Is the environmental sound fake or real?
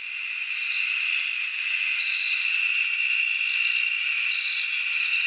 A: real